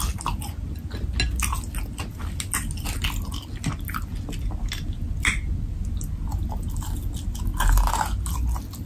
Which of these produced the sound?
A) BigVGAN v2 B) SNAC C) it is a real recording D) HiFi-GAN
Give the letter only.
C